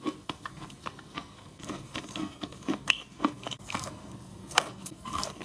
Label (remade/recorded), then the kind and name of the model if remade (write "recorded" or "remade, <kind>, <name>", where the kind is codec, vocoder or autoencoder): remade, codec, SNAC